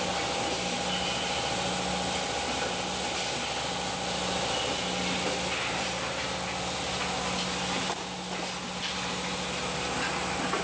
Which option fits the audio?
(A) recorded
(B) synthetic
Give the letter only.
A